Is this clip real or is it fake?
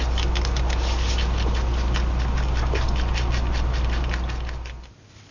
real